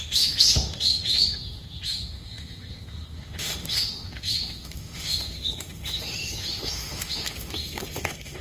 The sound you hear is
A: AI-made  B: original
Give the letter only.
A